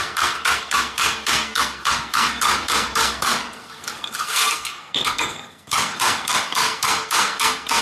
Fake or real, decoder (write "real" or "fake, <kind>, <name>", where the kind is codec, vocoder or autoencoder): fake, codec, SNAC